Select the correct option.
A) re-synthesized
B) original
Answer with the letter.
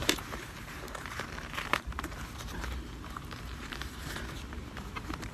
A